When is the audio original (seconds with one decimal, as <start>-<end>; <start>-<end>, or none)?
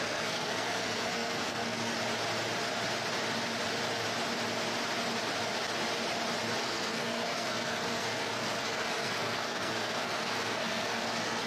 1.9-6.6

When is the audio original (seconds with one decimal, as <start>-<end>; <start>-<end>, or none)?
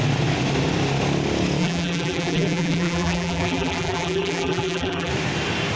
0.0-1.6; 5.1-5.8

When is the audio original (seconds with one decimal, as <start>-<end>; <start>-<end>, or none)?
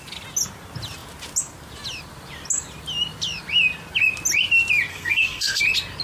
0.0-4.9; 5.6-6.0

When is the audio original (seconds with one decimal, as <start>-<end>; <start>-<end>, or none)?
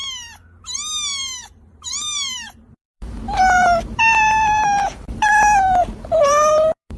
0.0-1.1; 5.3-5.8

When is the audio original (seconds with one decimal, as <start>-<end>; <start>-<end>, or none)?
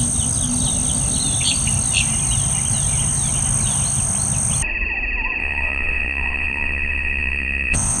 0.0-5.4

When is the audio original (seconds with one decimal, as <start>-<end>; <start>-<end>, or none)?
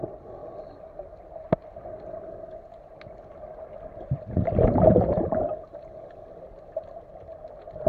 0.0-7.9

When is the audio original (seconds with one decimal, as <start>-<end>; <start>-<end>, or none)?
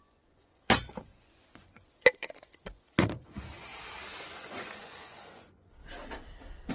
3.7-4.2; 5.8-6.7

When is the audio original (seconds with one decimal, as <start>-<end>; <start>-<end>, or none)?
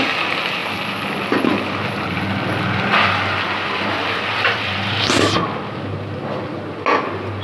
0.0-7.4